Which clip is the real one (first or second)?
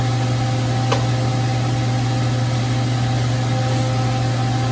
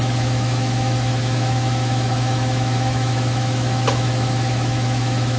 first